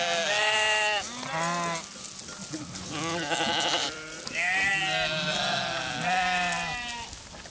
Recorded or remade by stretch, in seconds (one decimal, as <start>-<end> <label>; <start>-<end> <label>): 0.0-3.8 recorded; 3.8-4.7 remade; 4.7-7.5 recorded